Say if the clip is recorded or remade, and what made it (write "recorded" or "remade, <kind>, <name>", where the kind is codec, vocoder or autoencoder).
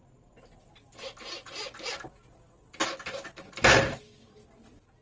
recorded